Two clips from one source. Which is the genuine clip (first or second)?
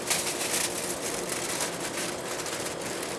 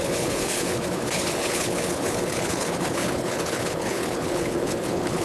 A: first